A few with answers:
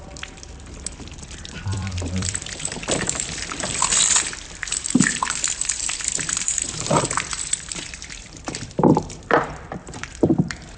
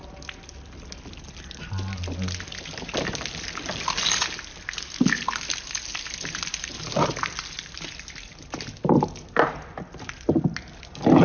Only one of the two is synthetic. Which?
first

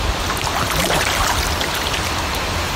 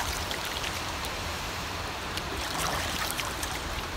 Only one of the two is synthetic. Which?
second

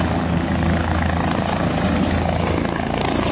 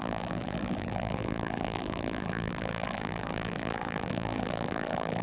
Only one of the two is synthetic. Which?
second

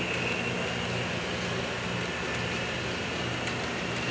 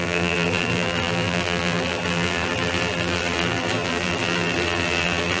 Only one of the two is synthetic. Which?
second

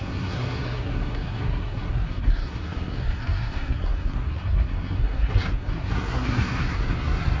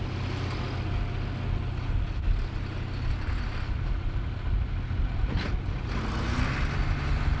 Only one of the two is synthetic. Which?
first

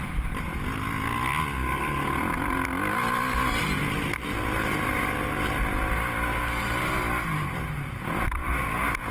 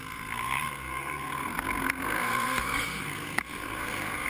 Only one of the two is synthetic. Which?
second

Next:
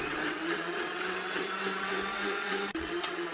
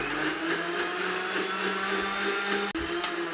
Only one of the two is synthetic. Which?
first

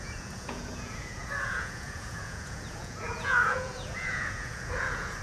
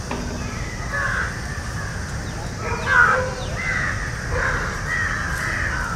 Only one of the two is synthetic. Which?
first